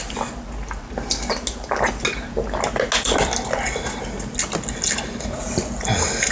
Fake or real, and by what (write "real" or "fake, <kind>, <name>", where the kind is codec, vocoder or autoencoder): real